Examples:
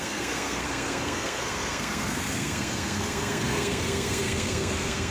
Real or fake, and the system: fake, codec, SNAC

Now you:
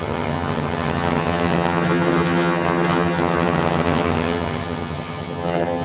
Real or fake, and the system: fake, vocoder, HiFi-GAN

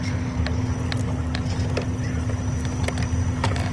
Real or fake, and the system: real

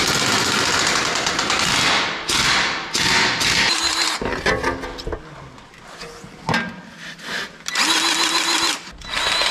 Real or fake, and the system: real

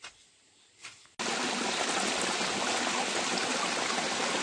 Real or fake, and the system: real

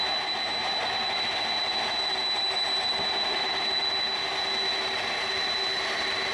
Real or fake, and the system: real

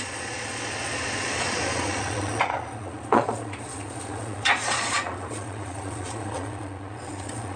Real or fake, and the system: fake, vocoder, Vocos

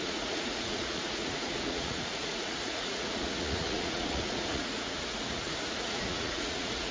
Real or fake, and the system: fake, vocoder, Vocos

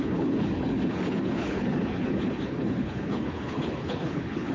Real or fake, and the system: fake, codec, HILCodec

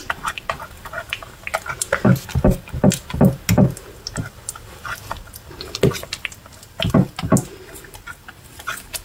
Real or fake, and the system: real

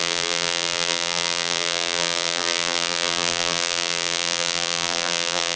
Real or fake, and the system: fake, vocoder, BigVGAN v2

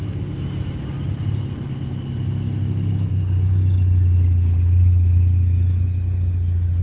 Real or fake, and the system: real